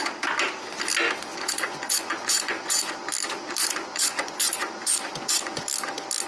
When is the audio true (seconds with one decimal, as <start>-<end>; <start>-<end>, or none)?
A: 0.0-1.3; 2.9-3.6; 5.6-6.3